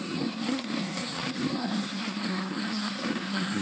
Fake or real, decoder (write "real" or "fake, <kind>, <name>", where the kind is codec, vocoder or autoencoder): fake, codec, SNAC